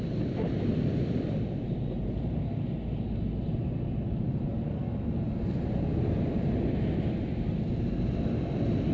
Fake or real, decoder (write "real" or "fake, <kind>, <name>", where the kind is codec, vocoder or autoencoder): real